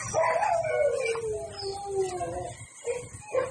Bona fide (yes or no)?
yes